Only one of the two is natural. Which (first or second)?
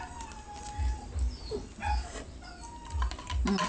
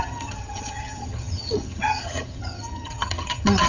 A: first